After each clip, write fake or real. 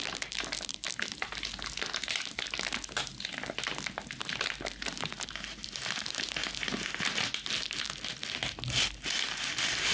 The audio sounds real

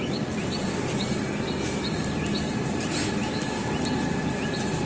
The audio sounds real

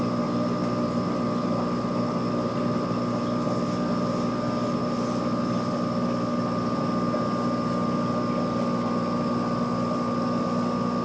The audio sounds real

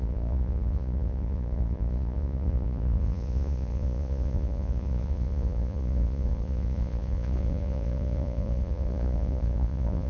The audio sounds fake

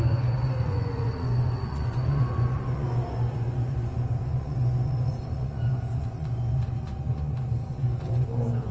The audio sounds fake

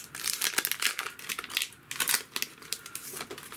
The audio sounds real